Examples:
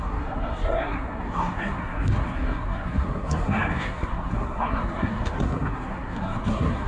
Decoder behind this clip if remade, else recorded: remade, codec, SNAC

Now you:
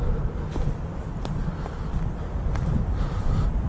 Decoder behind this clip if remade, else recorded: recorded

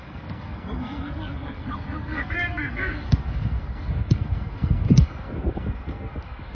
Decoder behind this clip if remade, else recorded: remade, codec, SNAC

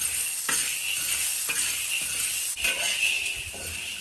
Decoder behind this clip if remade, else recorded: recorded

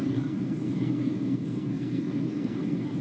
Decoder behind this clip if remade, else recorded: remade, codec, SNAC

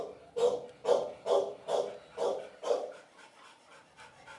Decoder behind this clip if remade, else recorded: recorded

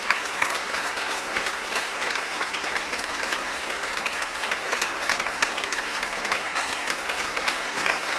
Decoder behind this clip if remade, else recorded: remade, codec, SNAC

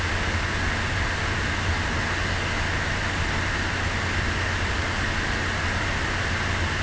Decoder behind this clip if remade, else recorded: recorded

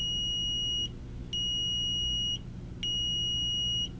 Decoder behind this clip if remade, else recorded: recorded